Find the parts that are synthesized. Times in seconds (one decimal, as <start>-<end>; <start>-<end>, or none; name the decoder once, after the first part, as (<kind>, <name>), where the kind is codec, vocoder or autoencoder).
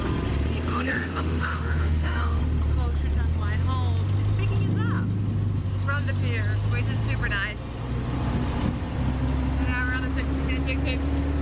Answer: 0.7-2.4 (autoencoder, DAC-VAE)